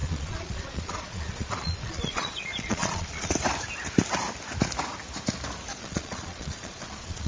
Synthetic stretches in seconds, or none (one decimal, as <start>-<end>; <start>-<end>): 0.0-3.3; 5.7-7.3